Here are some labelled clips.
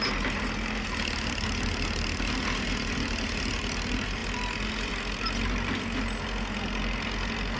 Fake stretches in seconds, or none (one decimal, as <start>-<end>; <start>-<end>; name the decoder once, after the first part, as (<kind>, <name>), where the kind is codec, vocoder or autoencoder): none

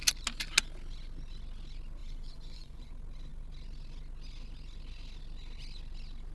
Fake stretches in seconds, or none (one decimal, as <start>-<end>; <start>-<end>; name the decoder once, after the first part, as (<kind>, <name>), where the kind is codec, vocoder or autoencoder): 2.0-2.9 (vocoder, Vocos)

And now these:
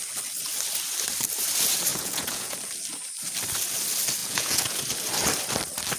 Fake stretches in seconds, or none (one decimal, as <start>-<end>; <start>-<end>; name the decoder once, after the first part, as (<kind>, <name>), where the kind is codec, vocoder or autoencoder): 1.9-2.6 (vocoder, Vocos); 4.2-4.8

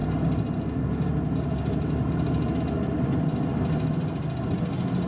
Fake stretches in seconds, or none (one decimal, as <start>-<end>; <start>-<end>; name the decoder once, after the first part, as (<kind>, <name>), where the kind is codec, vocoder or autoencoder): none